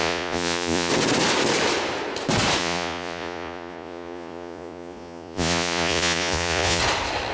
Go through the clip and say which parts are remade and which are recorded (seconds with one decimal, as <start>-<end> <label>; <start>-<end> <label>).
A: 0.0-0.9 remade; 0.9-2.6 recorded; 2.6-6.8 remade; 6.8-7.3 recorded